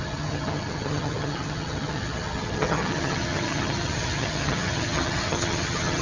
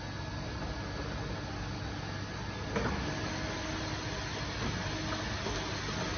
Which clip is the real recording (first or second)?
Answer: second